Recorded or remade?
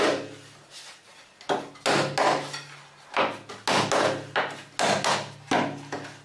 recorded